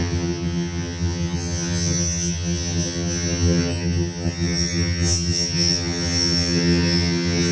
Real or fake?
fake